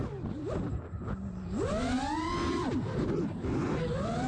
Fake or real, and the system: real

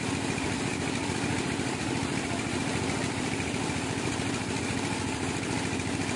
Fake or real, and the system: fake, vocoder, BigVGAN v2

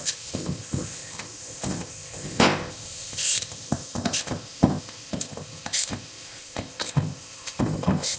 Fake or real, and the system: fake, codec, ZipCodec